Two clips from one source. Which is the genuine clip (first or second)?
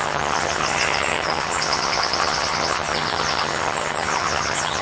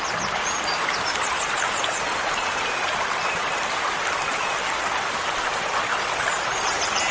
second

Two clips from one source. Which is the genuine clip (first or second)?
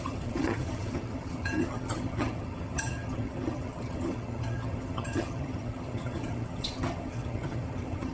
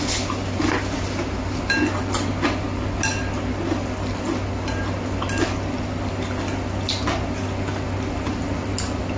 second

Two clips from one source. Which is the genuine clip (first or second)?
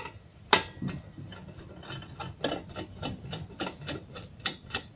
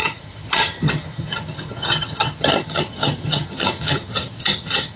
first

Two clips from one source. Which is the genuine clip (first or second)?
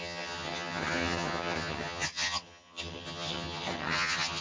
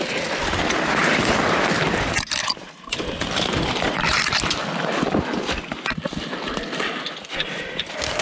second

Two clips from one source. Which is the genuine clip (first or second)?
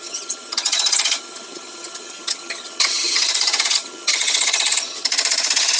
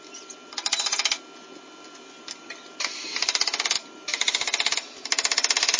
second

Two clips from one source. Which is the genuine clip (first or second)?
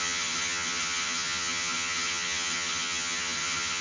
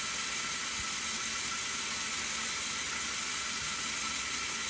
second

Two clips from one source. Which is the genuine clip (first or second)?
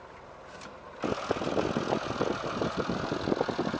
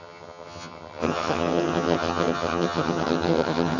first